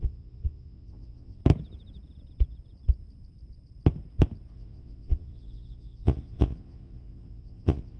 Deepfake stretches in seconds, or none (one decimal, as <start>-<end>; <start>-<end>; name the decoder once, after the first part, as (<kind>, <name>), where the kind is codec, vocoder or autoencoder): 0.0-1.4 (vocoder, Vocos); 4.5-8.0